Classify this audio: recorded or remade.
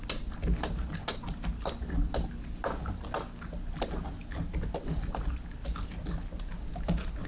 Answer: recorded